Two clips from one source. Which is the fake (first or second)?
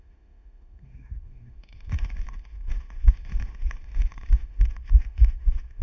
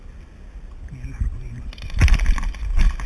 first